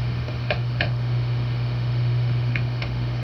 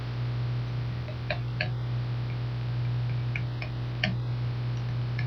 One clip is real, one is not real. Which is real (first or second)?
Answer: second